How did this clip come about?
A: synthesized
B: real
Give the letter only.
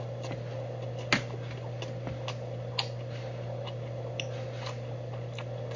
B